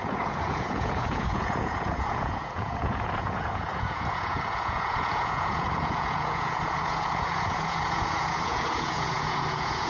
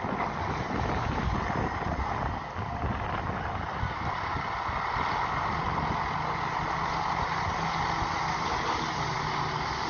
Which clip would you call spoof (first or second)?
first